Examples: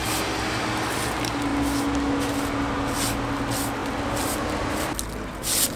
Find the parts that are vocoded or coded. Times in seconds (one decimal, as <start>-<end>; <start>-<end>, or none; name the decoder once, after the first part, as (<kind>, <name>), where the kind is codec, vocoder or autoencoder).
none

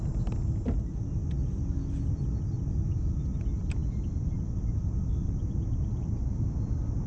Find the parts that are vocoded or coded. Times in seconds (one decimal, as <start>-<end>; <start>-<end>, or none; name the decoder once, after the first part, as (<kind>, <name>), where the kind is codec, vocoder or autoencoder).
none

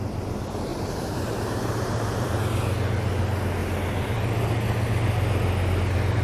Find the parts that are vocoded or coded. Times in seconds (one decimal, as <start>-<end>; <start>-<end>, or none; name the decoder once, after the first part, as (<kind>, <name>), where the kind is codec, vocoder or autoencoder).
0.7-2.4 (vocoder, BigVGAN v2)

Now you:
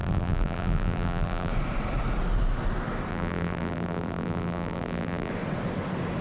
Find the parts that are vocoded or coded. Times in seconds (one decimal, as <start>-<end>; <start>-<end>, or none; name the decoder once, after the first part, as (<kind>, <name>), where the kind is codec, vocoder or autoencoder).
0.0-1.5 (vocoder, BigVGAN v2); 3.1-5.3

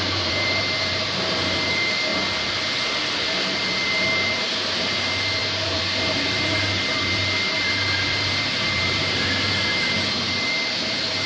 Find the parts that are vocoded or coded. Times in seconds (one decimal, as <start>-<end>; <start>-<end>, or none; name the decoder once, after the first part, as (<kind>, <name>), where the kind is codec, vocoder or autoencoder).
0.0-2.1 (vocoder, BigVGAN v2); 3.3-11.3

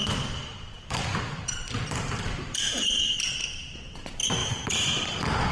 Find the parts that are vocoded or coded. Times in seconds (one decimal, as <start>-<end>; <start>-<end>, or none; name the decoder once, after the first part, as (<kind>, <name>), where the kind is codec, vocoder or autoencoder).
0.0-3.3 (vocoder, BigVGAN v2); 4.4-4.9